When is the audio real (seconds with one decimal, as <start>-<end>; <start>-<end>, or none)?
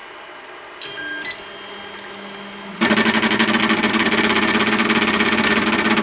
0.0-6.0